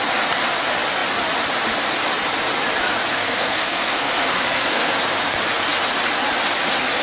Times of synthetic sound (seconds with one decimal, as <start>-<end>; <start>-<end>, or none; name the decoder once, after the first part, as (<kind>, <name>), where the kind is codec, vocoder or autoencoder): 3.1-4.9 (codec, SNAC)